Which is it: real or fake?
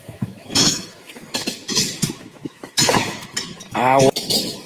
fake